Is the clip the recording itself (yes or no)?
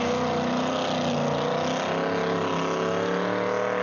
yes